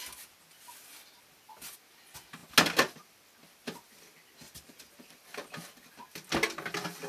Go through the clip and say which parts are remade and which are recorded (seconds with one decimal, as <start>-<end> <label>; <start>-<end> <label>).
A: 0.0-7.1 recorded